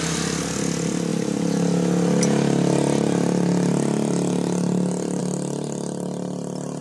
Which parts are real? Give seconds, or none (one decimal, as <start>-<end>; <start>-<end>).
0.0-6.8